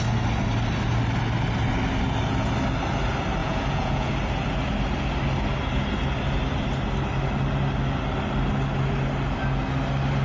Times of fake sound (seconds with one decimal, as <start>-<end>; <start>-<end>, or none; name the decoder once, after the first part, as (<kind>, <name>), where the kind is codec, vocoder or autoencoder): 3.4-4.1 (vocoder, Vocos)